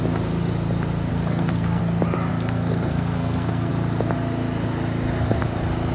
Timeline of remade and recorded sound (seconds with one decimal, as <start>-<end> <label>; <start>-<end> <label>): 0.0-1.1 recorded; 1.1-1.8 remade; 1.8-2.3 recorded; 2.3-3.7 remade; 3.7-5.9 recorded